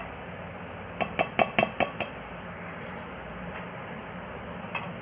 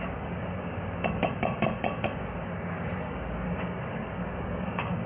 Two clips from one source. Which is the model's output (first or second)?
second